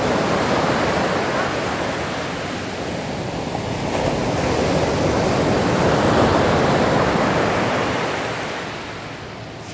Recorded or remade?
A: recorded